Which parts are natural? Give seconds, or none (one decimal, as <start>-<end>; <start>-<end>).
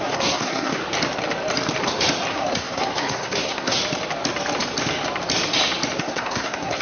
0.8-2.3; 3.8-6.0